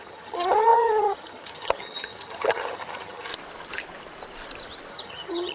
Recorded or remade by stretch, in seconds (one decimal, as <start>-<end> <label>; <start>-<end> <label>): 0.0-3.3 remade; 3.3-4.9 recorded; 4.9-5.5 remade

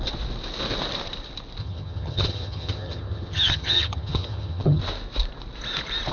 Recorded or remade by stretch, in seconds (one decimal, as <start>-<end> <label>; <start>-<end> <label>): 0.0-1.6 recorded; 1.6-4.8 remade; 4.8-6.1 recorded

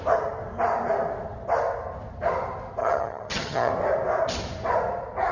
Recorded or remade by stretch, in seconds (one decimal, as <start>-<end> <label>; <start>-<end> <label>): 0.0-2.8 recorded; 2.8-3.7 remade; 3.7-5.3 recorded

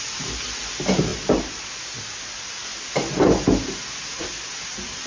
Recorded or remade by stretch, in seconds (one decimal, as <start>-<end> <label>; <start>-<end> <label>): 0.0-5.1 recorded

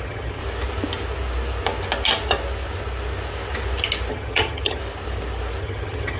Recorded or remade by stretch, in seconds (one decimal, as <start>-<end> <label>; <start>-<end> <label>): 0.0-0.4 remade; 0.4-4.1 recorded; 4.1-4.8 remade; 4.8-5.6 recorded; 5.6-6.2 remade

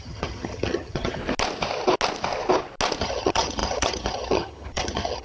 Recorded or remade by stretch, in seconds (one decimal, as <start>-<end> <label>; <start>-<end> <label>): 0.0-1.2 remade; 1.2-3.0 recorded; 3.0-5.2 remade